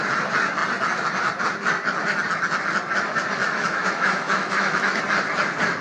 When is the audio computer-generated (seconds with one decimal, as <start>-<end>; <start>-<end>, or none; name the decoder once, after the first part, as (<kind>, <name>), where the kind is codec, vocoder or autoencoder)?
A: 3.4-5.0 (autoencoder, DAC-VAE)